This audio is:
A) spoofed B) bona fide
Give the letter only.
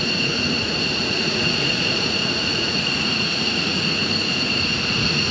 A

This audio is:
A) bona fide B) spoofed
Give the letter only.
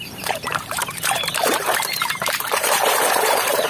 B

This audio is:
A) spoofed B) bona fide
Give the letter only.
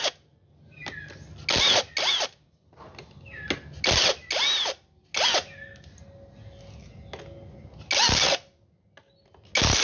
B